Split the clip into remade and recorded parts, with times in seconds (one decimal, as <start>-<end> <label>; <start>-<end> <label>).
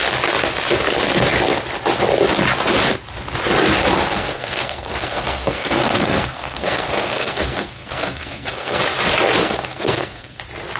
0.0-4.0 recorded; 4.0-8.8 remade; 8.8-9.4 recorded; 9.4-10.4 remade; 10.4-10.8 recorded